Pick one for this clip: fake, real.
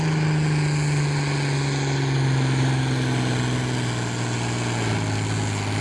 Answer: real